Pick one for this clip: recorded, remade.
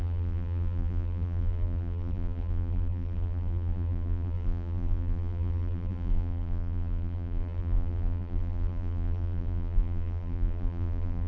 remade